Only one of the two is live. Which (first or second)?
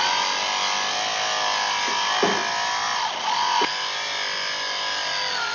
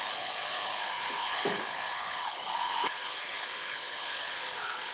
first